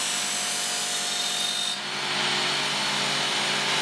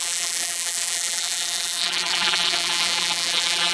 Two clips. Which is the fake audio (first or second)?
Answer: second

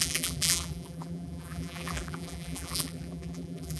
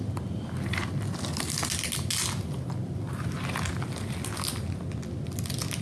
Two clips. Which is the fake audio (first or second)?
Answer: first